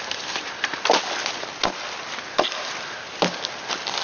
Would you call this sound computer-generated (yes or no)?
no